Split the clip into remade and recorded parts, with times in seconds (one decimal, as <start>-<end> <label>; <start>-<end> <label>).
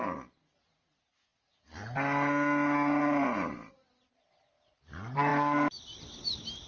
0.0-6.7 recorded